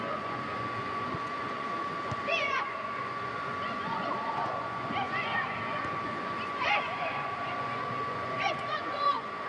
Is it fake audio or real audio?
fake